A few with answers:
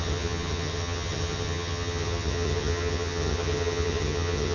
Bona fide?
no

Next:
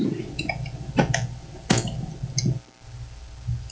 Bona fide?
yes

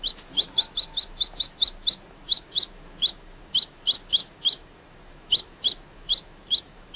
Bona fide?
no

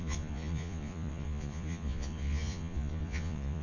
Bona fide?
no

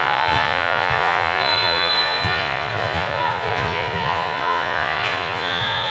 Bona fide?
no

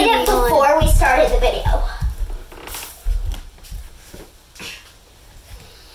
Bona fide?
yes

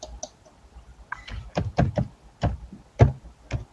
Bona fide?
yes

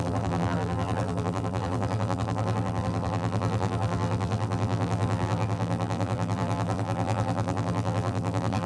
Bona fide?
no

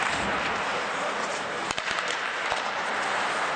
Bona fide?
no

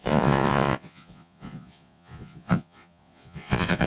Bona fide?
no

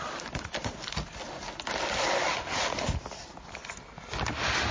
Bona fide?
yes